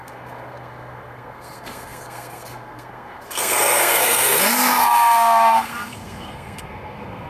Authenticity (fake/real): fake